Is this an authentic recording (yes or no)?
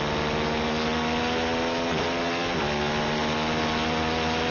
yes